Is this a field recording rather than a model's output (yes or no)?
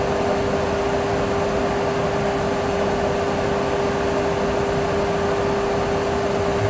yes